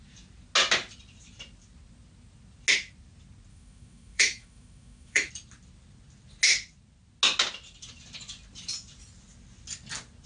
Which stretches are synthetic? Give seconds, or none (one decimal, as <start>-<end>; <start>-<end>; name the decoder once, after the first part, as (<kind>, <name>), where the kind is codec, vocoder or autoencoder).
3.5-5.3 (autoencoder, DAC-VAE)